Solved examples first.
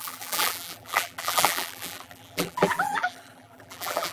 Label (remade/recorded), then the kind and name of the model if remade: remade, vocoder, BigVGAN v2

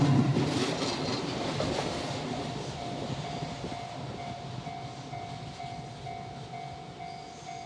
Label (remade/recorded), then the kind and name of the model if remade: recorded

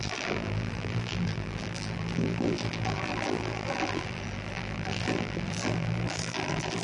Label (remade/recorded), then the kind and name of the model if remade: remade, vocoder, BigVGAN v2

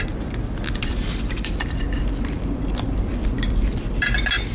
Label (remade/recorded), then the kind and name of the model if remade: remade, vocoder, BigVGAN v2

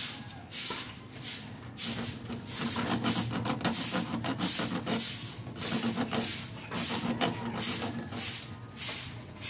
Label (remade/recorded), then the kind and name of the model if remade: recorded